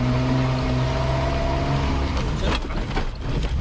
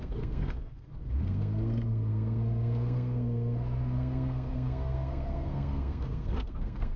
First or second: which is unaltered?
first